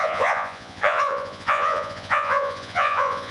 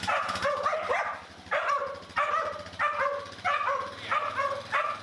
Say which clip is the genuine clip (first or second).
second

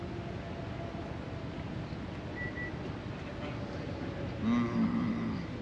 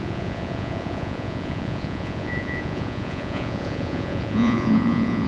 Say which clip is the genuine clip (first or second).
first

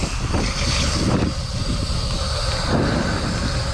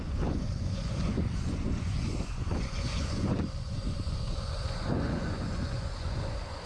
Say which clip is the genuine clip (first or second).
first